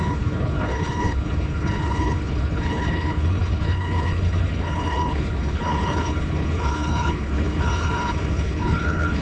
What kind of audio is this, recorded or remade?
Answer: remade